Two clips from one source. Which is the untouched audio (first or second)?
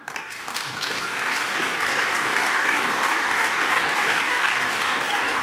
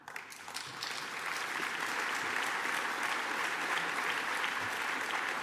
second